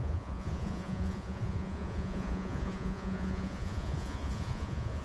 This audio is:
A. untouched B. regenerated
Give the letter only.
B